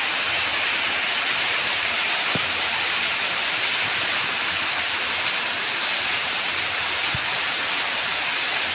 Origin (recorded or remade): remade